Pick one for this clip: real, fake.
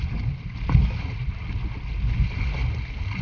real